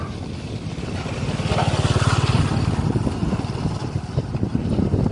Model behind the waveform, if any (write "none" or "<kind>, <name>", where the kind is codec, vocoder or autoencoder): none